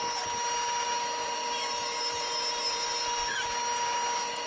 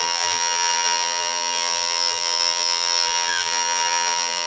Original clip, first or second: first